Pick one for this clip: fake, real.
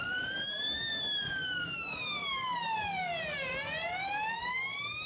fake